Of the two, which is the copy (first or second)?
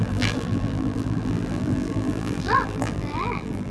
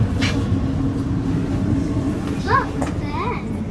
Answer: first